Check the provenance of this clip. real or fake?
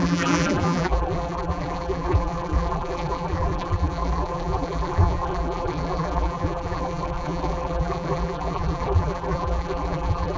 fake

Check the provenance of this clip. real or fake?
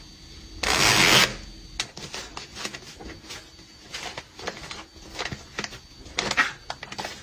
real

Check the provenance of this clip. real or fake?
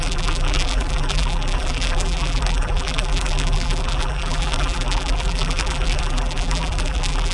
fake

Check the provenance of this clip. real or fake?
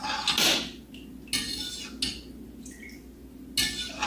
real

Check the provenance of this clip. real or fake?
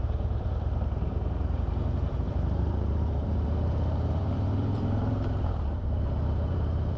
fake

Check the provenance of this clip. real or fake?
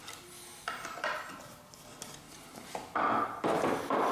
real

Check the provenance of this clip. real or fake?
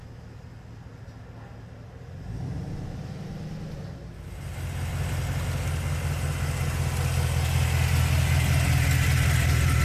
real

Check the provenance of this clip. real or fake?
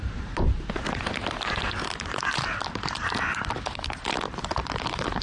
fake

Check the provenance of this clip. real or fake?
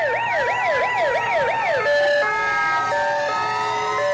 real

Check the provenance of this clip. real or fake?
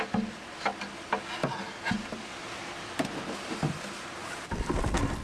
real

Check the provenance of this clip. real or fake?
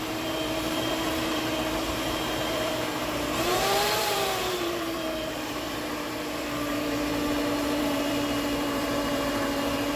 fake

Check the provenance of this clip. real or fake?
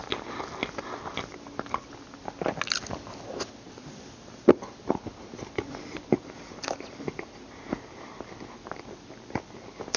real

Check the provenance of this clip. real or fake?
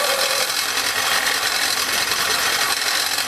fake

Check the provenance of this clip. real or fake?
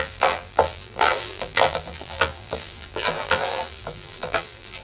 fake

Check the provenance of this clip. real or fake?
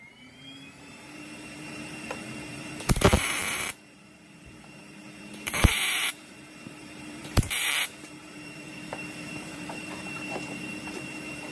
fake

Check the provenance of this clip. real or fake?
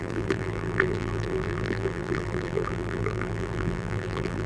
fake